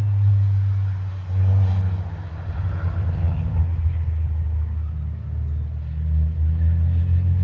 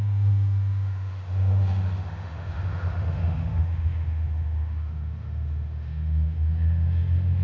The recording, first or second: first